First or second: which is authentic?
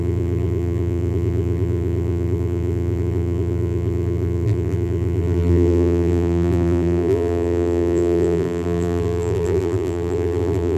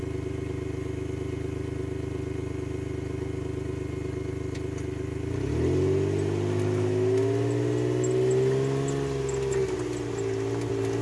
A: second